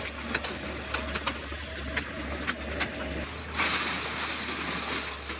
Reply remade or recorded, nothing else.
recorded